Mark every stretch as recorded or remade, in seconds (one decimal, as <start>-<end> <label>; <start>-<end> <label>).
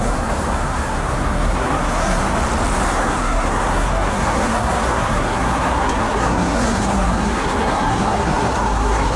0.0-2.2 remade; 2.2-2.9 recorded; 2.9-9.2 remade